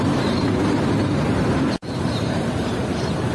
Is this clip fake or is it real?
fake